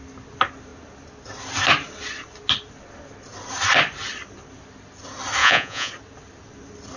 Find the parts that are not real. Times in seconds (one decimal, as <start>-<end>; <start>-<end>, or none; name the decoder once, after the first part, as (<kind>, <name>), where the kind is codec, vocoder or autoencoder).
5.4-5.9 (vocoder, Vocos)